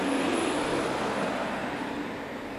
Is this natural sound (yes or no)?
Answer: yes